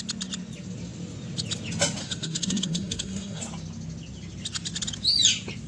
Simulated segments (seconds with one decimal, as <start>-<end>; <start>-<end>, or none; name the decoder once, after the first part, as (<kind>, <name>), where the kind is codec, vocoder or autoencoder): 2.0-3.4 (codec, SNAC)